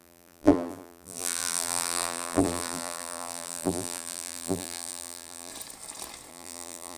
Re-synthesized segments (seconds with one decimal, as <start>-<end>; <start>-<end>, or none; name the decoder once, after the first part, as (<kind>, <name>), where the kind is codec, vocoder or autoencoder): 0.0-5.5 (vocoder, BigVGAN v2); 6.3-7.0